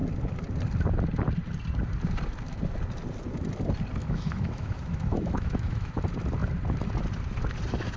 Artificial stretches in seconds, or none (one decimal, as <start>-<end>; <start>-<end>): 4.0-6.0